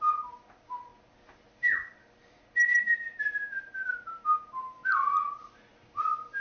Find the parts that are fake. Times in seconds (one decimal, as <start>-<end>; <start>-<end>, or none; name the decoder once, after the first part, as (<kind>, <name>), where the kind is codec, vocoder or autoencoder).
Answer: none

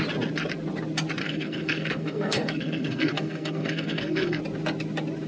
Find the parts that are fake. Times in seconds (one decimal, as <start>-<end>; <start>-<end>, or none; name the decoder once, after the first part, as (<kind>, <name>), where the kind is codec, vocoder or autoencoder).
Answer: 1.2-4.4 (codec, SNAC)